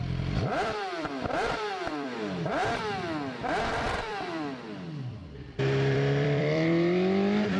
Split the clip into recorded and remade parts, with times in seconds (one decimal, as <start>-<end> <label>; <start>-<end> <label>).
0.0-2.6 remade; 2.6-3.8 recorded; 3.8-7.6 remade